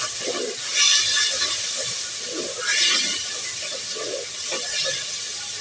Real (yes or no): yes